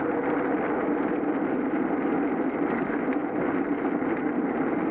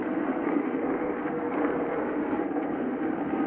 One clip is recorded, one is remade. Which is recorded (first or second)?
first